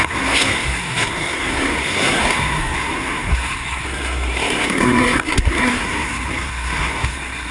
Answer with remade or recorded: remade